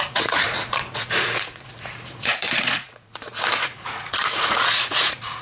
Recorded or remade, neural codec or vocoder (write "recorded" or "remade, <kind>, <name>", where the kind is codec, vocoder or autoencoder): remade, vocoder, Vocos